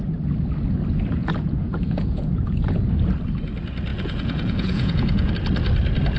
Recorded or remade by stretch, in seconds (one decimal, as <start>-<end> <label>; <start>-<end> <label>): 0.0-1.2 recorded; 1.2-2.9 remade; 2.9-3.9 recorded; 3.9-5.3 remade; 5.3-6.2 recorded

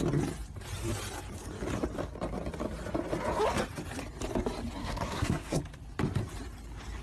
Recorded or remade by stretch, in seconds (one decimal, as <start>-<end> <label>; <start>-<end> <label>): 0.0-4.8 recorded; 4.8-5.6 remade; 5.6-7.0 recorded

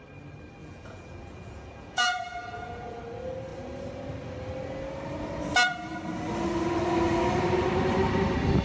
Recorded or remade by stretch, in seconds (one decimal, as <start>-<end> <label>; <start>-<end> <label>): 0.0-0.6 recorded; 0.6-3.0 remade; 3.0-8.6 recorded

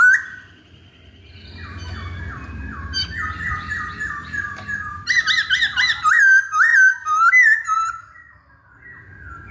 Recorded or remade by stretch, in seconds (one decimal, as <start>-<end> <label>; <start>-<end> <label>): 0.0-9.5 recorded